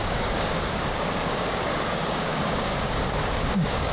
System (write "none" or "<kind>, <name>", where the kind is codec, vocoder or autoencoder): codec, DAC